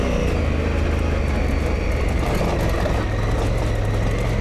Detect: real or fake real